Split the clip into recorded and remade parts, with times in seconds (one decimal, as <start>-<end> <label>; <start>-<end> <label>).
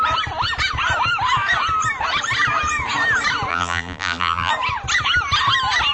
0.0-3.5 recorded; 3.5-4.5 remade; 4.5-5.9 recorded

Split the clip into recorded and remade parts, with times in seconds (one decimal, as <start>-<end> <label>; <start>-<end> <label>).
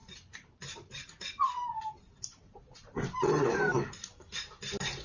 0.0-3.0 remade; 3.0-5.0 recorded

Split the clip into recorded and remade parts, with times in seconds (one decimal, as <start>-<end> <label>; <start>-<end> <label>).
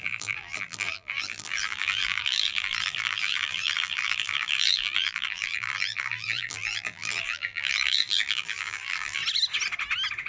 0.0-9.2 remade; 9.2-10.3 recorded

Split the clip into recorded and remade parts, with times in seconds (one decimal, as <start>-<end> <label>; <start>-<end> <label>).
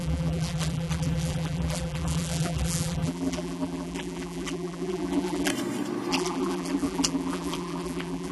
0.0-5.5 remade; 5.5-6.1 recorded; 6.1-8.3 remade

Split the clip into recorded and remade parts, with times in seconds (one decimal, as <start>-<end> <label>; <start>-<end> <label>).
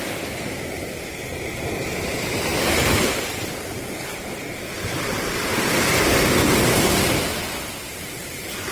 0.0-7.9 recorded; 7.9-8.7 remade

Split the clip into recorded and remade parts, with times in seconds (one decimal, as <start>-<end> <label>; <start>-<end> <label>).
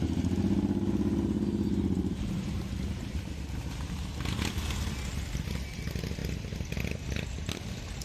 0.0-2.0 recorded; 2.0-2.6 remade; 2.6-8.0 recorded